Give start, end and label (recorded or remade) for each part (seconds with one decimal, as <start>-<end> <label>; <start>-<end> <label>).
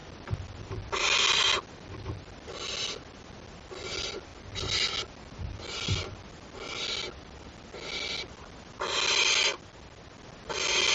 0.0-10.9 recorded